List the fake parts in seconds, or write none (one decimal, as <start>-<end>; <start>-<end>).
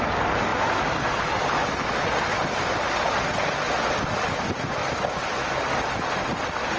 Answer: none